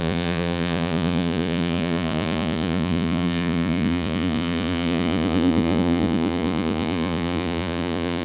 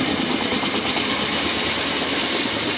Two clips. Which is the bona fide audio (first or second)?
second